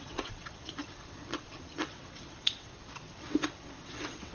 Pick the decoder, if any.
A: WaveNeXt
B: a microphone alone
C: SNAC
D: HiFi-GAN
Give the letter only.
A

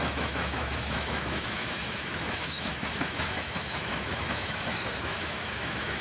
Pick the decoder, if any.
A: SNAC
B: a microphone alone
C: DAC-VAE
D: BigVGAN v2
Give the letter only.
C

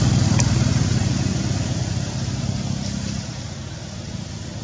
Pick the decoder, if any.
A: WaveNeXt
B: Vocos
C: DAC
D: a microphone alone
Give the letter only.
D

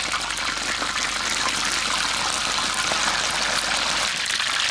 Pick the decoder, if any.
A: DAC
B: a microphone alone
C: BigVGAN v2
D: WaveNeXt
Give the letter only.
B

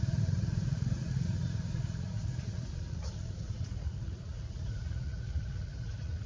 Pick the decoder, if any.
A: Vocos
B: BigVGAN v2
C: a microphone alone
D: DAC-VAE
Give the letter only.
A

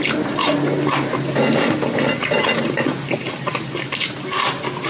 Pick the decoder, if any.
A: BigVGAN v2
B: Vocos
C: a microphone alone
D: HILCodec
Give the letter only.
C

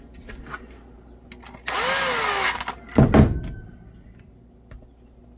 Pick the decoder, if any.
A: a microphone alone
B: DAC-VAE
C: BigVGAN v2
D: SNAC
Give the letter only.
A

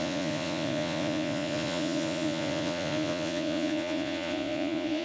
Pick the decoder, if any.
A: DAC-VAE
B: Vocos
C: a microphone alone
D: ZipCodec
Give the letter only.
B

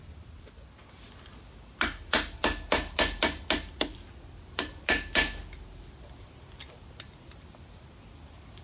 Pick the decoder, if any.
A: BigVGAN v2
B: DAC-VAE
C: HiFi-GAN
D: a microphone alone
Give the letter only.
D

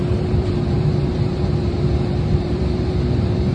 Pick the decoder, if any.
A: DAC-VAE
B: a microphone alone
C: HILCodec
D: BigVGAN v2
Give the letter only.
D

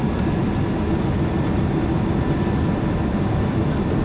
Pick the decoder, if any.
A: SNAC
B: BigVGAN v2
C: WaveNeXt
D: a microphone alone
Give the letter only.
D